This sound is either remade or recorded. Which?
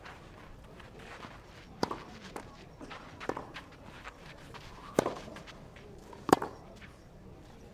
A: remade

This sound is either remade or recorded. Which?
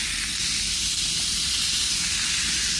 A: recorded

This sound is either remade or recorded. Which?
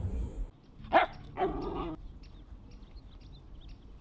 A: recorded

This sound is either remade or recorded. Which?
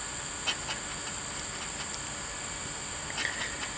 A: recorded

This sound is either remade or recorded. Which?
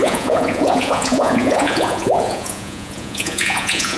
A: remade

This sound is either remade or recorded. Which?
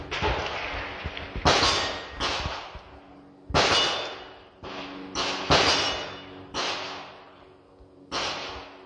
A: recorded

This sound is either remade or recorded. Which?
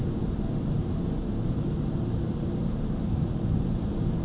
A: remade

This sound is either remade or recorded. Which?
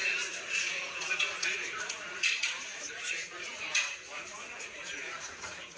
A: remade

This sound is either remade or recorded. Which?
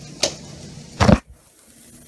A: recorded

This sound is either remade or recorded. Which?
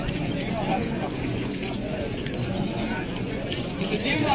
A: remade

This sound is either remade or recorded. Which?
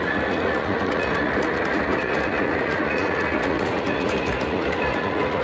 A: remade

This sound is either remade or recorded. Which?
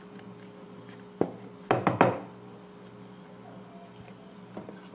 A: recorded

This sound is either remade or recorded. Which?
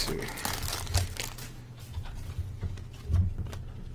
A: recorded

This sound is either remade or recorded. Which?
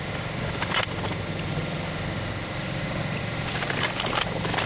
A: recorded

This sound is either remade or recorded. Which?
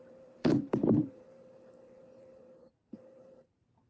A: remade